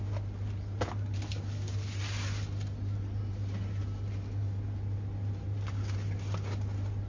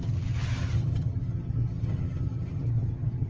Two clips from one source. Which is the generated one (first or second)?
second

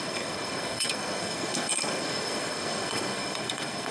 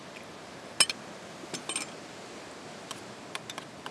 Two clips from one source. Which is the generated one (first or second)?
first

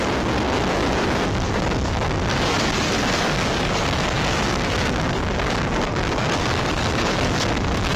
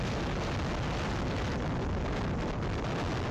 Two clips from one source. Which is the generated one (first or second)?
first